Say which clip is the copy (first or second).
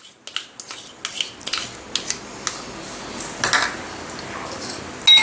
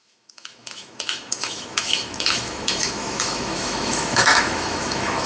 second